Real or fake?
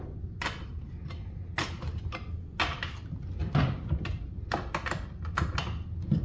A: real